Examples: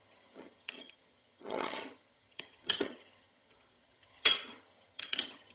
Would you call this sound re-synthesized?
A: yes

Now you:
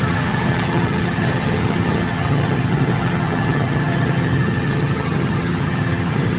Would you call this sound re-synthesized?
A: yes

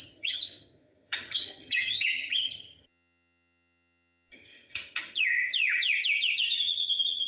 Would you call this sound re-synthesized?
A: yes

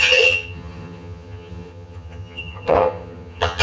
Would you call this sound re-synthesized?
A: yes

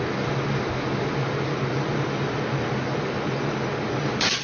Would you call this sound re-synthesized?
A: no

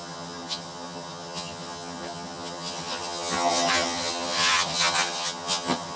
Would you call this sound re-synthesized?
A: yes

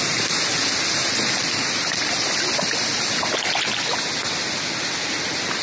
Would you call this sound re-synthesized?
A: no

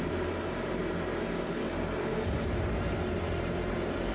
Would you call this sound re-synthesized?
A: no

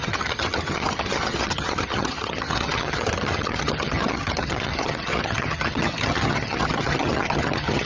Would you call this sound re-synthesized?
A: yes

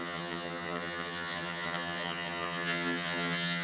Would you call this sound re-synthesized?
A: yes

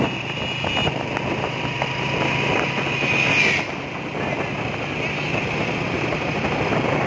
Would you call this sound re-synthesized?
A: no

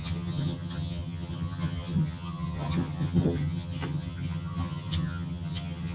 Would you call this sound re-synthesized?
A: yes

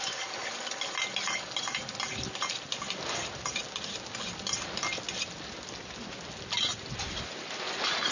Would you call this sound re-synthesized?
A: no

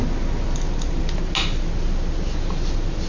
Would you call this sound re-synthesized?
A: no